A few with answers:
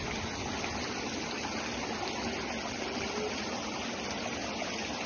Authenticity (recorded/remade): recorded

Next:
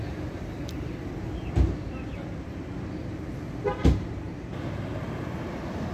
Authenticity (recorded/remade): recorded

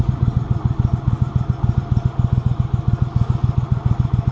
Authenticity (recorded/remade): recorded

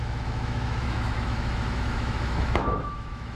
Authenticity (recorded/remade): remade